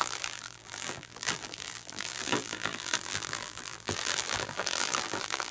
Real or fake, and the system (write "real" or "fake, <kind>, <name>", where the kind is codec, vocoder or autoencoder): fake, vocoder, BigVGAN v2